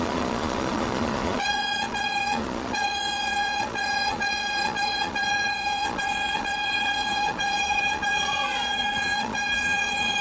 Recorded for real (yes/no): no